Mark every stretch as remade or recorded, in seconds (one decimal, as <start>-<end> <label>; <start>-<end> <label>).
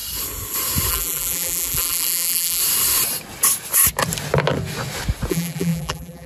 0.0-0.9 recorded; 0.9-2.6 remade; 2.6-5.3 recorded; 5.3-6.3 remade